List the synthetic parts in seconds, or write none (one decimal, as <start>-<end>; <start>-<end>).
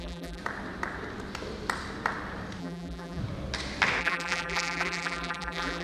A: 0.0-0.4; 2.6-3.2; 4.0-5.8